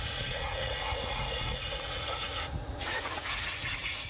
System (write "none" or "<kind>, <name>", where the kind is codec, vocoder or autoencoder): vocoder, Vocos